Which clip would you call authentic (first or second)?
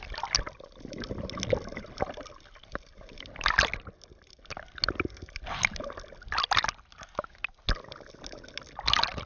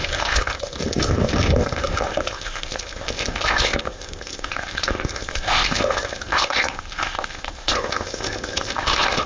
first